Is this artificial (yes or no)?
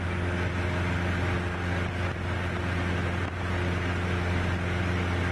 no